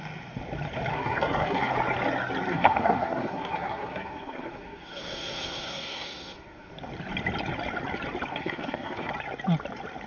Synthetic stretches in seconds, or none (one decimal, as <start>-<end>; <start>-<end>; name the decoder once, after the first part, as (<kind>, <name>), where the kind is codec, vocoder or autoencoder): 0.9-1.7 (codec, SNAC); 2.5-6.7; 8.3-9.1